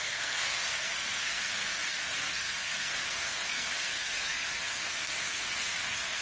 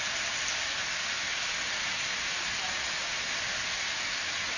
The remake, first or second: first